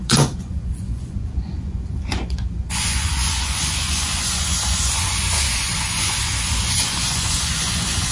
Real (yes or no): no